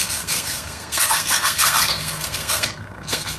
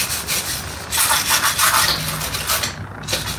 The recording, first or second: second